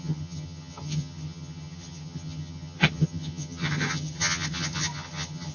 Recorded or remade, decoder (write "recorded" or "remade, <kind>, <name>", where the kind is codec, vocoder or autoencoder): remade, vocoder, HiFi-GAN